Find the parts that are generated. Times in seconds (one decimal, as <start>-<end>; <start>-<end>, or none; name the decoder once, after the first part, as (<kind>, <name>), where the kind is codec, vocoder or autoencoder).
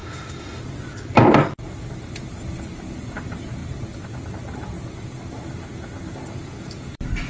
0.0-0.6 (autoencoder, DAC-VAE)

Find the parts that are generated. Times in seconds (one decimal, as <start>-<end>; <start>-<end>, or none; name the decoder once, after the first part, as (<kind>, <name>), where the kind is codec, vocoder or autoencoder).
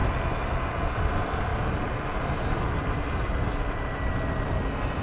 none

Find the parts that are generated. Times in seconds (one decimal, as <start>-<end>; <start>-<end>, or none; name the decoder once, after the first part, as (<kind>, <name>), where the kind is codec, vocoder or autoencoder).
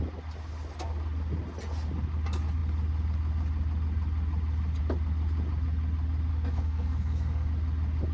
6.3-7.5 (codec, SNAC)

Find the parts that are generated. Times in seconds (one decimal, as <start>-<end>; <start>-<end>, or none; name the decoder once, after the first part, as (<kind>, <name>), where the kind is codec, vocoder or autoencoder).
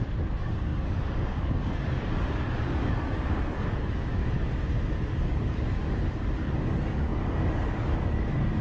0.0-4.2 (codec, DAC); 5.1-8.6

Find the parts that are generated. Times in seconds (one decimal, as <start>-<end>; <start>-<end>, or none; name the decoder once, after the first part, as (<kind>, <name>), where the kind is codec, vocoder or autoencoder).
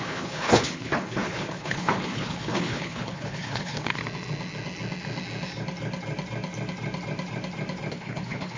0.0-4.0 (codec, HILCodec); 7.9-8.6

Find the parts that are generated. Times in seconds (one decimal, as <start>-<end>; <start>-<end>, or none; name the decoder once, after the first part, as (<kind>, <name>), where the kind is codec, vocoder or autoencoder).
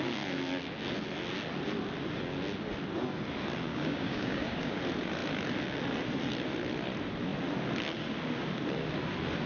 3.7-4.8 (codec, DAC)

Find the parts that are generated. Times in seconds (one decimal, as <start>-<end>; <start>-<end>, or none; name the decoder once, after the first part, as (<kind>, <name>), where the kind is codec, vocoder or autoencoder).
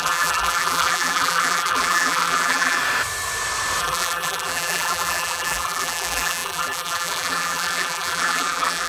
0.0-2.8 (vocoder, BigVGAN v2); 3.8-8.9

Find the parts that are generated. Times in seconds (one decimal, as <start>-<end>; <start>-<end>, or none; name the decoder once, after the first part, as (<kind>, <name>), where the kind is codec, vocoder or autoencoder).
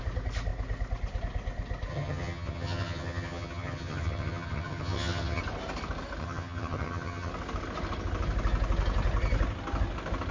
1.9-5.4 (vocoder, HiFi-GAN); 6.2-7.3